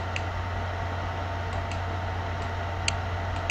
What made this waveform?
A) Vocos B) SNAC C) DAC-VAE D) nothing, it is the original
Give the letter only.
D